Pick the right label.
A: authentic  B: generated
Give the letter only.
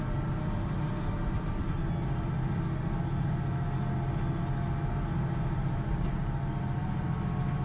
A